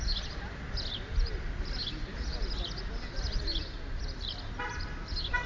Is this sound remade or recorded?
recorded